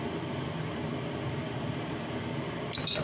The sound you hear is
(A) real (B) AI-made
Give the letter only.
A